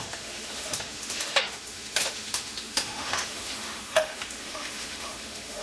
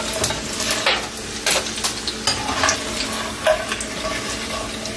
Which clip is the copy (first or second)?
first